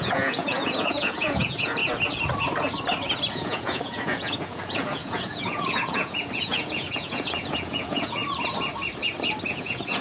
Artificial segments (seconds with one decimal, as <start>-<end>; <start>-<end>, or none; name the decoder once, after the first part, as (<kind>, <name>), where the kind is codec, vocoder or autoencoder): 0.0-1.8 (vocoder, Vocos); 3.3-8.2; 9.5-10.0